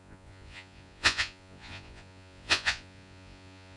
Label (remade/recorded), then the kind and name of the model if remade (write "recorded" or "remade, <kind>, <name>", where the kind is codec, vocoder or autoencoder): remade, vocoder, Vocos